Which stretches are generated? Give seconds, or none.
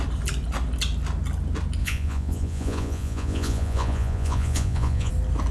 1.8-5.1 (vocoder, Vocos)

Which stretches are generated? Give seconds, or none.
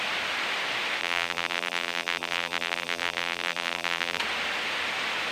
1.0-4.2 (vocoder, BigVGAN v2)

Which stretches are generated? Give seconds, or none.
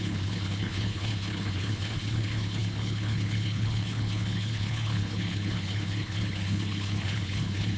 0.0-7.8 (codec, HILCodec)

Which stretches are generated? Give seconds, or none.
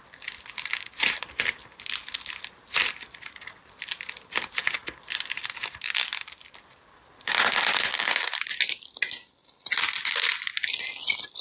4.8-7.4 (vocoder, BigVGAN v2); 7.9-8.6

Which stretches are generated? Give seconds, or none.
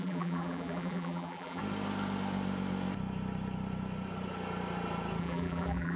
0.0-1.6 (vocoder, BigVGAN v2); 5.2-6.0